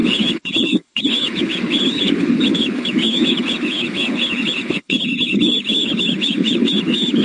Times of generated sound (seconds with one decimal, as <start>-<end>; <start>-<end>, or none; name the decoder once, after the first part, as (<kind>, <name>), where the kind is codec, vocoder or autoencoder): 0.0-7.2 (codec, HILCodec)